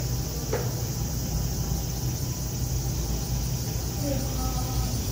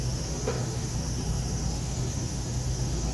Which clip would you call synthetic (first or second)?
second